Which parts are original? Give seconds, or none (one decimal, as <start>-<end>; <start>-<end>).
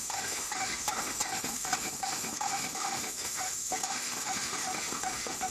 none